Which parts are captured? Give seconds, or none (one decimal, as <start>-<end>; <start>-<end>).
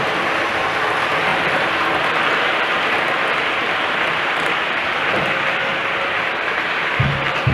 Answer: 0.0-1.3; 1.9-3.6; 5.2-7.5